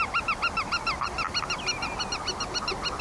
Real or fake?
real